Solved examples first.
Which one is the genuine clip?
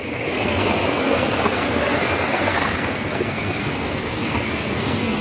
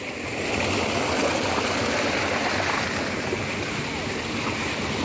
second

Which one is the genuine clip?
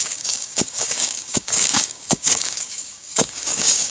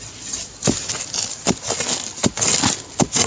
second